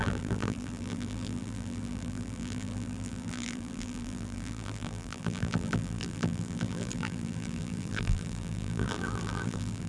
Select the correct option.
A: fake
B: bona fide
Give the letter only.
A